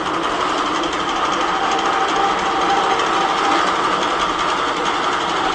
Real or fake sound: real